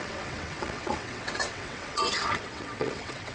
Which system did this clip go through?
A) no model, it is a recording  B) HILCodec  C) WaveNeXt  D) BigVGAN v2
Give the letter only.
C